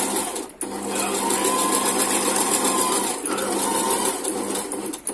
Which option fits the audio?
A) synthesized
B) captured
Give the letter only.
B